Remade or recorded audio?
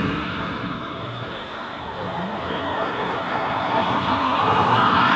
remade